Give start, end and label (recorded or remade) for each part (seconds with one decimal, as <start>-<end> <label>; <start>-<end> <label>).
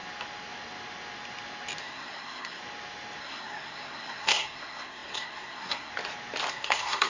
0.0-1.8 recorded; 1.8-2.6 remade; 2.6-3.2 recorded; 3.2-5.9 remade; 5.9-6.5 recorded; 6.5-7.1 remade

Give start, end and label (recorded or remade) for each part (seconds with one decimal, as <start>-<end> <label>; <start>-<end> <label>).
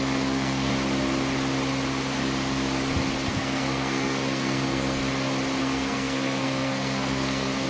0.0-0.7 remade; 0.7-3.3 recorded; 3.3-5.0 remade; 5.0-5.6 recorded; 5.6-7.7 remade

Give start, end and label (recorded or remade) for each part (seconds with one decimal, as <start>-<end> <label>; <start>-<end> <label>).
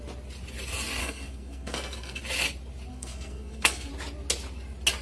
0.0-1.0 recorded; 1.0-2.2 remade; 2.2-2.9 recorded; 2.9-3.9 remade; 3.9-5.0 recorded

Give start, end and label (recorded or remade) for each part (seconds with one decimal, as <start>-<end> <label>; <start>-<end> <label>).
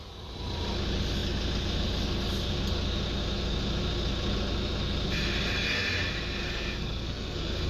0.0-6.4 recorded; 6.4-7.7 remade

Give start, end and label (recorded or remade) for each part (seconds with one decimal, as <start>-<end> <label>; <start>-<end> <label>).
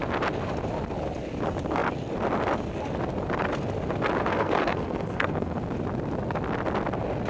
0.0-4.3 recorded; 4.3-5.6 remade; 5.6-7.3 recorded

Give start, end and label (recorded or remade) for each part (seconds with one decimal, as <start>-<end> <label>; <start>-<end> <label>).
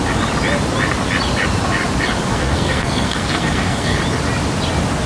0.0-2.3 recorded; 2.3-4.0 remade; 4.0-5.1 recorded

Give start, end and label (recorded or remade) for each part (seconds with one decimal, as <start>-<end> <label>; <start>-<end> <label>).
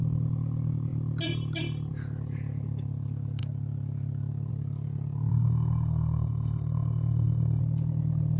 0.0-5.3 recorded; 5.3-7.6 remade; 7.6-8.4 recorded